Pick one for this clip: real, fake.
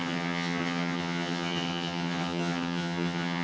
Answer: fake